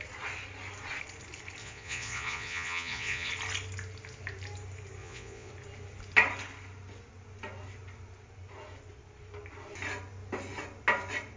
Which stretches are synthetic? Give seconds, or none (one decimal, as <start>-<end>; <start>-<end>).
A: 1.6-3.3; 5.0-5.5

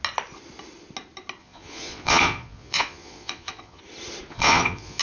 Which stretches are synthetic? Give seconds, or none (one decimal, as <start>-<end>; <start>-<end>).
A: 1.4-3.8; 4.3-5.0

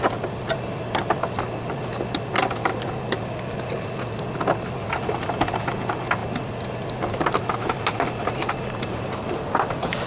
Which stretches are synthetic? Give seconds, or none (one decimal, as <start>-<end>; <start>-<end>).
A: none